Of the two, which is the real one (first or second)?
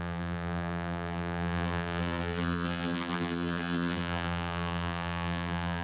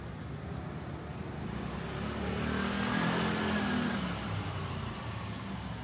second